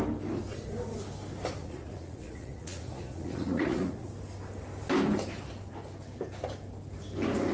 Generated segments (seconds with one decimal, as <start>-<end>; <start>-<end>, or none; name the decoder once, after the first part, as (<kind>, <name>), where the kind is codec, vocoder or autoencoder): 1.6-4.1 (vocoder, Vocos)